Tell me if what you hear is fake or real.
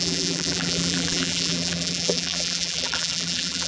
fake